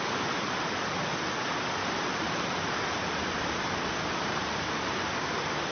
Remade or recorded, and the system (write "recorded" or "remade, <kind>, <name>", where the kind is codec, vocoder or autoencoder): recorded